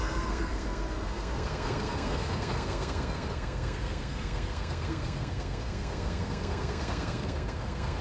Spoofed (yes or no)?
yes